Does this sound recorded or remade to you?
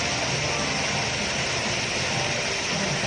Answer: recorded